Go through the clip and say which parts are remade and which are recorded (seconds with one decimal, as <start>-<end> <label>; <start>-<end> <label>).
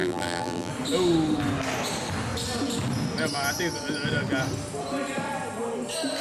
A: 0.0-0.7 remade; 0.7-6.2 recorded